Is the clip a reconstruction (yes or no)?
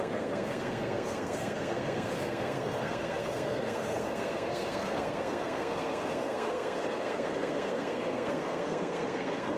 yes